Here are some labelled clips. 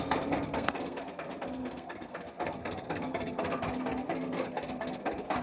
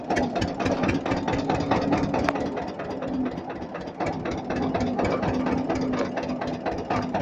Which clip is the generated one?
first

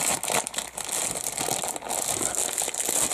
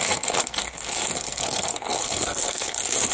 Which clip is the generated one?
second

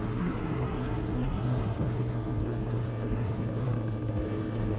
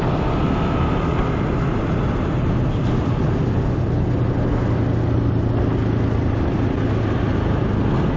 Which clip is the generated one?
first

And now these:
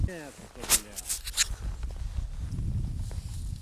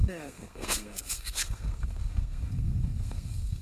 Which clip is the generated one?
second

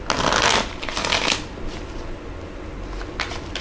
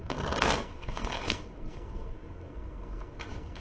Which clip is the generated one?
second